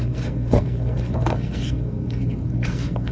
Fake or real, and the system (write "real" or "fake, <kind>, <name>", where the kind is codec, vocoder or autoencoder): fake, codec, SNAC